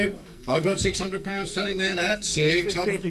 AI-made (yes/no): yes